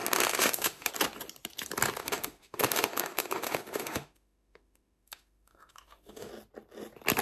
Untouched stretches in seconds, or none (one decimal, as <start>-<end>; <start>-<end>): 0.9-2.0; 6.3-7.2